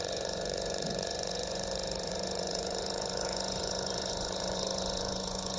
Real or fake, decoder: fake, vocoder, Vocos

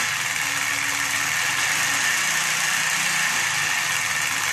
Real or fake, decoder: real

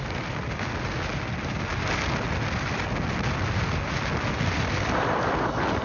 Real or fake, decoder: real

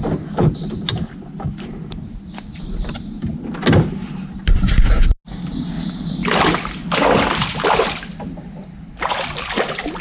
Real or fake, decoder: real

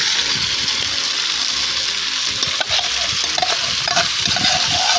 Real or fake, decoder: real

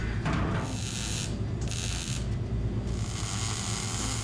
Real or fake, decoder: real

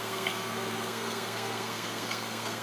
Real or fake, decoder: fake, codec, SNAC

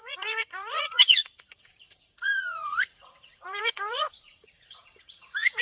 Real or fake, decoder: fake, vocoder, Vocos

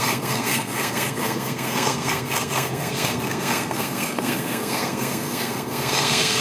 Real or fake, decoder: fake, codec, SNAC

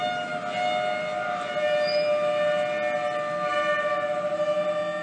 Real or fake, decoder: real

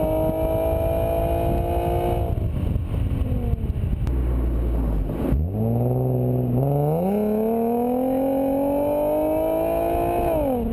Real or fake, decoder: real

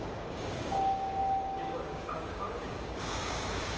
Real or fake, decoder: fake, codec, DAC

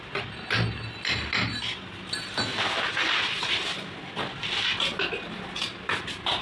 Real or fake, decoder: real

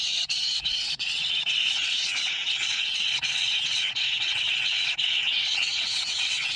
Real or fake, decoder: fake, vocoder, WaveNeXt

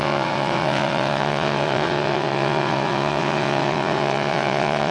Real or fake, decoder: fake, vocoder, WaveNeXt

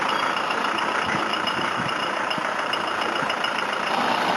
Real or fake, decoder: fake, vocoder, BigVGAN v2